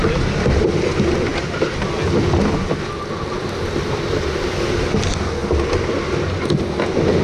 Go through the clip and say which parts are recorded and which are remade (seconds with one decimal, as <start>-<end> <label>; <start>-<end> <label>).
0.0-7.2 recorded